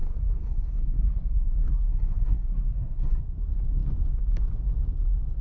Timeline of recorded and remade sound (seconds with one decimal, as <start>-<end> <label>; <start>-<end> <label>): 0.0-3.2 remade; 3.2-5.4 recorded